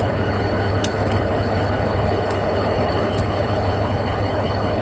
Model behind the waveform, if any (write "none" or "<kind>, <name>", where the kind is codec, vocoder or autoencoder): codec, HILCodec